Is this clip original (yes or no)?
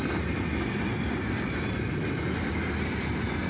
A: yes